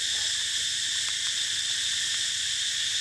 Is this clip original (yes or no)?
yes